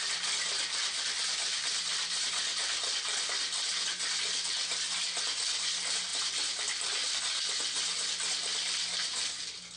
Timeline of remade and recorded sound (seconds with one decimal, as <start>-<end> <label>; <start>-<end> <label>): 0.0-1.9 recorded; 1.9-3.4 remade; 3.4-6.1 recorded; 6.1-7.2 remade; 7.2-9.8 recorded